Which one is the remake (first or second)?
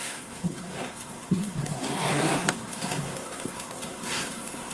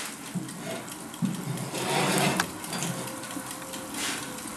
first